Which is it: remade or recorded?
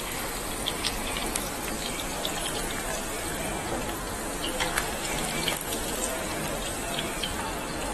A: recorded